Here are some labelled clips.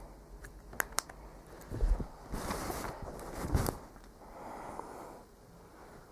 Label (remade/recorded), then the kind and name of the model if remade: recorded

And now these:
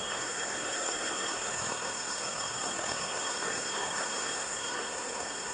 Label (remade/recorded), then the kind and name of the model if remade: remade, codec, SNAC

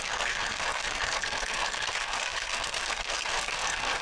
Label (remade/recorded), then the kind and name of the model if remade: remade, codec, SNAC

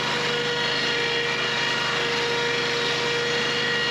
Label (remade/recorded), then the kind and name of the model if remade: recorded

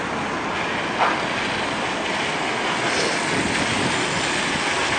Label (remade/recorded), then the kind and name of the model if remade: recorded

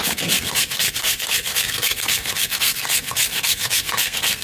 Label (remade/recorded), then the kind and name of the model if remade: remade, codec, SNAC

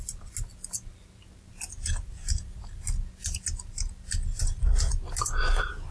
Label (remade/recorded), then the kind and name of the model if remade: recorded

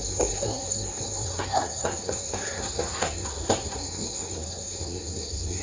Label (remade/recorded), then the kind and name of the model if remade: remade, codec, SNAC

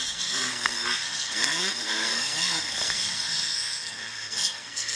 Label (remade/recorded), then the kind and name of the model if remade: remade, codec, SNAC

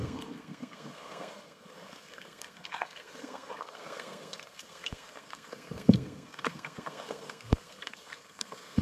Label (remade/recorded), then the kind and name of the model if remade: remade, codec, SNAC